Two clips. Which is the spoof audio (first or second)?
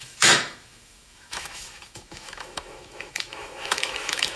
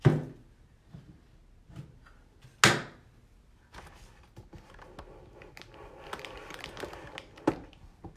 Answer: first